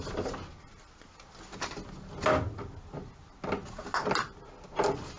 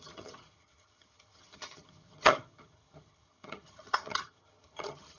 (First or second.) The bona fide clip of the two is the first